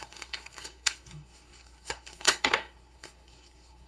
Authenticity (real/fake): fake